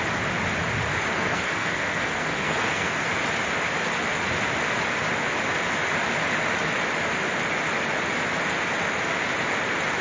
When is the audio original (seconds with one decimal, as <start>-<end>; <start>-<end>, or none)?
0.0-1.1; 3.1-10.0